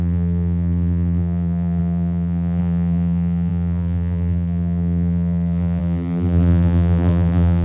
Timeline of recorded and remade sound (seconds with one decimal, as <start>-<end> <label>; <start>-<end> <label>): 0.0-7.6 remade